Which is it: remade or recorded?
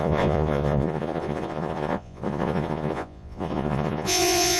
remade